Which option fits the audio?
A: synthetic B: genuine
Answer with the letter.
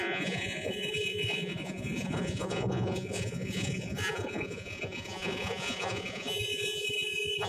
A